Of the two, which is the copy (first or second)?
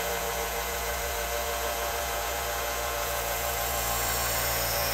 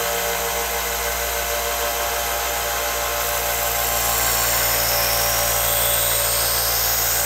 first